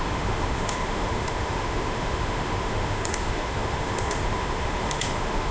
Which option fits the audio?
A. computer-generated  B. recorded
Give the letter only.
A